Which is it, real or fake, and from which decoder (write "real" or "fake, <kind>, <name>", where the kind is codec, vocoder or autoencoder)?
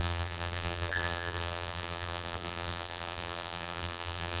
fake, vocoder, BigVGAN v2